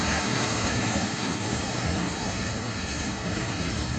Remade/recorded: remade